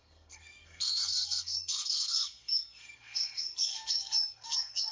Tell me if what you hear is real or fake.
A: fake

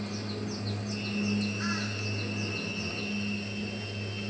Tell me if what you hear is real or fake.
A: real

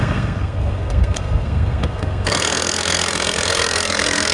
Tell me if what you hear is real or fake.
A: fake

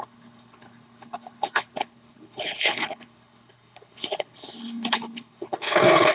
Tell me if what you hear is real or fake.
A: fake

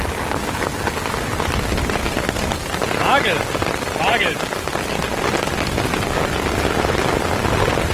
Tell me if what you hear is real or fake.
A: real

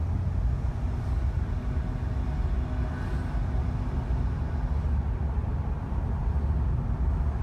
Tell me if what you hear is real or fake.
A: real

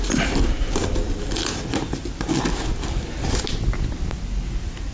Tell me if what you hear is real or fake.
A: real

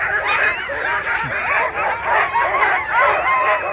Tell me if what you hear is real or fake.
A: real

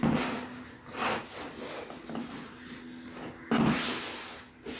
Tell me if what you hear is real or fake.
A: real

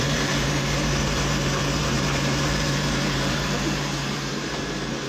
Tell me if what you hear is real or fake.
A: fake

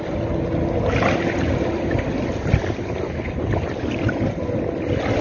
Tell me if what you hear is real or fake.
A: real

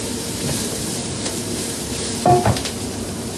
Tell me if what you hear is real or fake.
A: fake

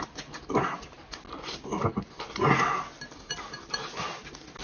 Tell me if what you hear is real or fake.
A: real